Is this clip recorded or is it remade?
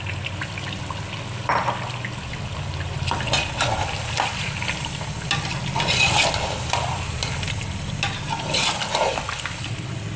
recorded